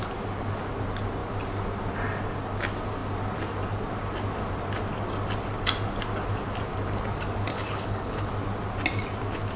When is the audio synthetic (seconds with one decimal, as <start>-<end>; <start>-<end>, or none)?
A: 7.5-8.3